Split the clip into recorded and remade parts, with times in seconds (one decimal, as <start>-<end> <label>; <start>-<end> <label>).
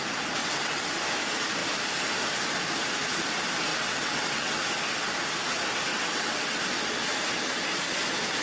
0.0-0.4 recorded; 0.4-0.9 remade; 0.9-3.7 recorded; 3.7-4.6 remade; 4.6-5.9 recorded; 5.9-6.6 remade; 6.6-8.4 recorded